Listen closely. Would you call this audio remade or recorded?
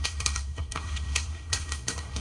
remade